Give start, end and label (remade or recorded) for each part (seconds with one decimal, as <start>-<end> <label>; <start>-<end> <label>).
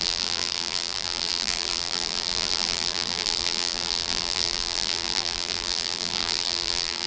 0.0-7.1 remade